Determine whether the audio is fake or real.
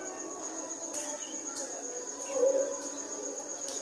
real